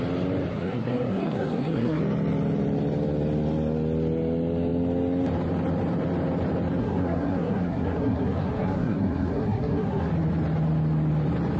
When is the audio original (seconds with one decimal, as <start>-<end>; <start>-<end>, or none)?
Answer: 0.0-0.5; 2.0-6.8; 10.1-11.6